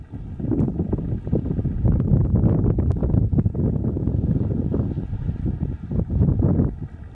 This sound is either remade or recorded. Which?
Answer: recorded